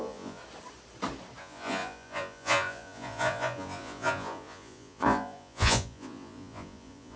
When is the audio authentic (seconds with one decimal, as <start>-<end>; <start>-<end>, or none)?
0.4-1.4